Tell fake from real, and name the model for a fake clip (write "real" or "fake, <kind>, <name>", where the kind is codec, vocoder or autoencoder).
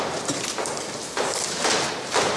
real